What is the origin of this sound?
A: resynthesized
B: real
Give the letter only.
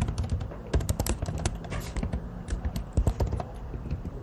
A